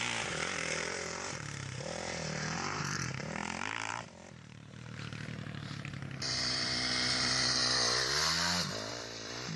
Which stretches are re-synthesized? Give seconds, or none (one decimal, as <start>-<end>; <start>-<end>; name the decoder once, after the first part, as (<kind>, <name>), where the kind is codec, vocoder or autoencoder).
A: 0.0-3.4 (vocoder, BigVGAN v2); 3.9-7.6; 8.9-9.6